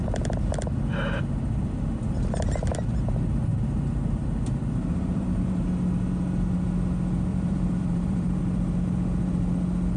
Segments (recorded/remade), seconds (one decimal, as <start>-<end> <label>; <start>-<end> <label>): 0.0-3.5 recorded; 3.5-5.7 remade; 5.7-7.3 recorded; 7.3-8.4 remade; 8.4-10.0 recorded